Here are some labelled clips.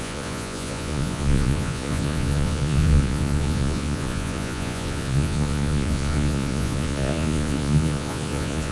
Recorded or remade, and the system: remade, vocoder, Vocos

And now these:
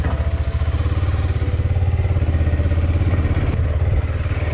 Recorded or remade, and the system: recorded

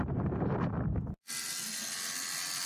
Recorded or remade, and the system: recorded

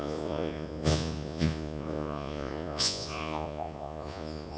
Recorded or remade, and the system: remade, vocoder, Vocos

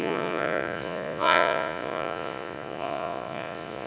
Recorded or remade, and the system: remade, vocoder, Vocos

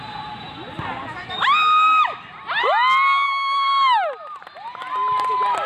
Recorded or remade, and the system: recorded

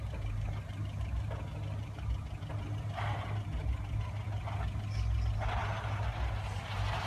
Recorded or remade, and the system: recorded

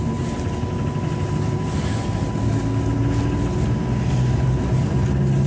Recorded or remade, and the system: recorded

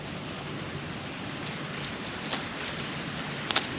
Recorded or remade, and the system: recorded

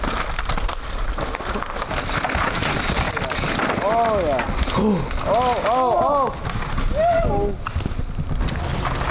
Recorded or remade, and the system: recorded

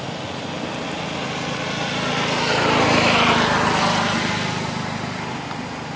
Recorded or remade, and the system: recorded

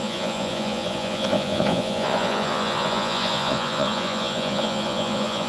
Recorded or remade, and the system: remade, vocoder, Vocos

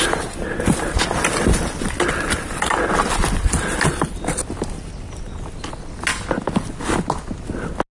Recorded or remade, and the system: recorded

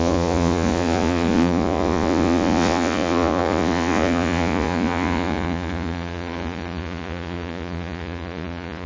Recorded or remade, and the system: remade, vocoder, Vocos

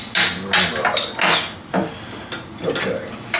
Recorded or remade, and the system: recorded